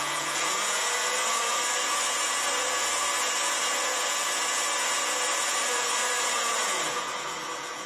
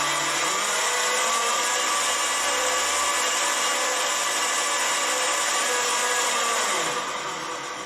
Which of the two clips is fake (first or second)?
first